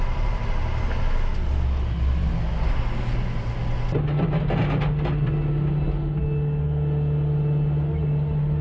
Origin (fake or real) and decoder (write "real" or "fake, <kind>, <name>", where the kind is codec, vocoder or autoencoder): real